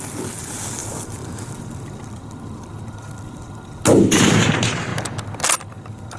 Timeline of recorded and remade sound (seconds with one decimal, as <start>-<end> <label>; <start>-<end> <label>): 0.0-6.2 recorded